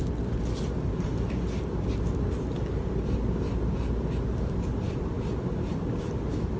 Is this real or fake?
real